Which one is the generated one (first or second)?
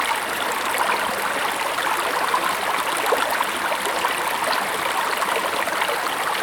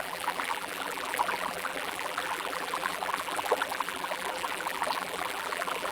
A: second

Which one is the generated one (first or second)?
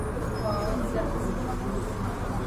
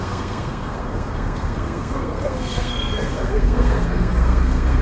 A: second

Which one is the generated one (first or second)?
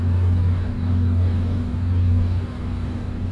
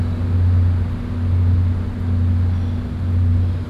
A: first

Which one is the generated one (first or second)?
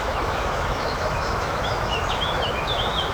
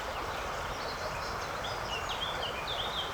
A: first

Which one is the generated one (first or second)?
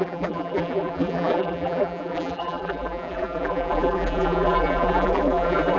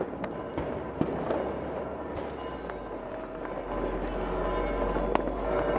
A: first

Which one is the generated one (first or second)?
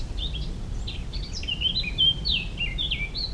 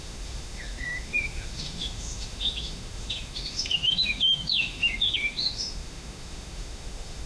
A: second